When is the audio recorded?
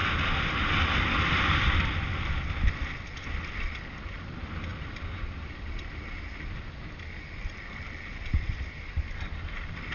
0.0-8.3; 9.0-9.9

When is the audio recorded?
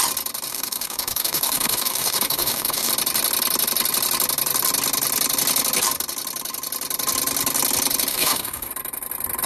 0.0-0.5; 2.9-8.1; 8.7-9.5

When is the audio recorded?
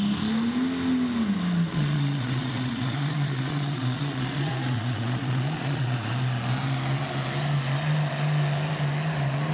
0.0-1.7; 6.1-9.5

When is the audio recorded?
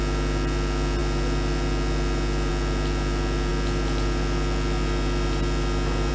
0.0-6.1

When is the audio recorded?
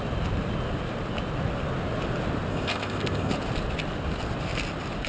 0.0-2.5; 3.3-5.1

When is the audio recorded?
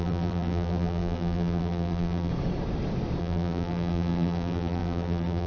2.3-3.2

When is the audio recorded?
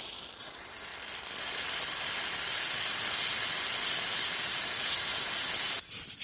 0.9-4.6